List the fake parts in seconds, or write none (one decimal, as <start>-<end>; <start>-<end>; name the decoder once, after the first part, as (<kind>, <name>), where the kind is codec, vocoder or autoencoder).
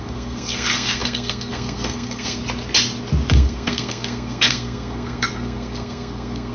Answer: 0.0-2.4 (codec, SNAC); 3.3-6.5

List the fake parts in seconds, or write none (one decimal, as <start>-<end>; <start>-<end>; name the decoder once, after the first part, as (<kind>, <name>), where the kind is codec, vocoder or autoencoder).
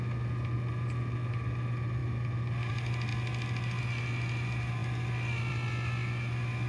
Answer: none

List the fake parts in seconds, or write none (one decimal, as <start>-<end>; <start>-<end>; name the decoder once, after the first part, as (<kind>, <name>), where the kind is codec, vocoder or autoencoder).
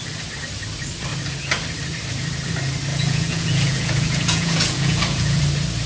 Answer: 2.9-5.4 (vocoder, Vocos)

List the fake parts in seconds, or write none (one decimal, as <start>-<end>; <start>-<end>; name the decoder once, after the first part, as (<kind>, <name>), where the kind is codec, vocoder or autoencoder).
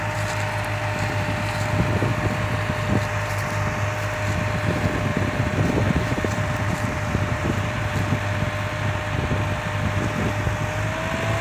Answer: 5.1-7.9 (vocoder, BigVGAN v2)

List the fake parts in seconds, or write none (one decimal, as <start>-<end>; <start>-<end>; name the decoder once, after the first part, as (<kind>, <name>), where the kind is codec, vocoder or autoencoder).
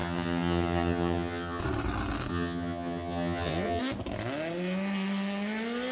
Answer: 0.0-1.6 (vocoder, HiFi-GAN); 2.3-3.8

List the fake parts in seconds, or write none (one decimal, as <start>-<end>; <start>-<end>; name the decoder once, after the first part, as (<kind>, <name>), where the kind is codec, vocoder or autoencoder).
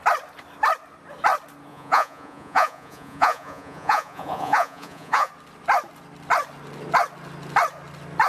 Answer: 1.7-5.3 (vocoder, Vocos)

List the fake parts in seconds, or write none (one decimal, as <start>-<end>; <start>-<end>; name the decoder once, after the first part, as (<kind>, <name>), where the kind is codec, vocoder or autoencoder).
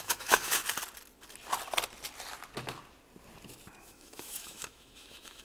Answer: 0.0-0.6 (autoencoder, DAC-VAE); 3.8-5.4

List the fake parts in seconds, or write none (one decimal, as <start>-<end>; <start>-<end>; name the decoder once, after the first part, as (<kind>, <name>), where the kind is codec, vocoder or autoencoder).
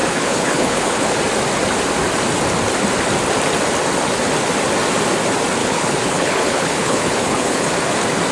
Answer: 0.0-1.0 (codec, HILCodec); 5.6-7.7